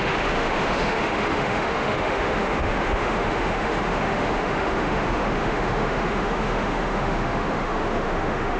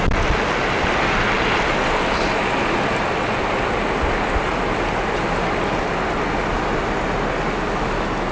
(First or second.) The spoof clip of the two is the first